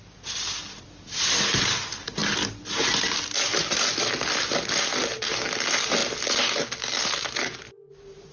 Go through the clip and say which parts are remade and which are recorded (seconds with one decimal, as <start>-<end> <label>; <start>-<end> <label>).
0.0-8.3 recorded